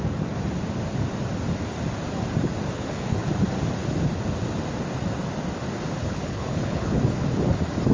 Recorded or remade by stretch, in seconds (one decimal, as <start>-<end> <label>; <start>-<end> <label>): 0.0-2.7 recorded; 2.7-3.4 remade; 3.4-6.0 recorded; 6.0-7.0 remade; 7.0-7.9 recorded